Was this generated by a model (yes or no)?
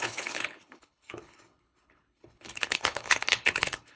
yes